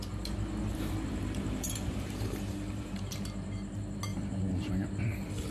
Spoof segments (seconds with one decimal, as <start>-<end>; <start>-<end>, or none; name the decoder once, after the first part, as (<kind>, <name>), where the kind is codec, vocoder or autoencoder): 0.7-3.1 (vocoder, BigVGAN v2); 4.1-4.7